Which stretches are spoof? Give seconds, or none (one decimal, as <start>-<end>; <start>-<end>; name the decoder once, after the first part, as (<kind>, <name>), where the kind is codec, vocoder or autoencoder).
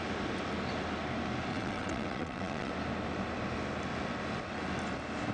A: 1.5-2.7 (vocoder, WaveNeXt)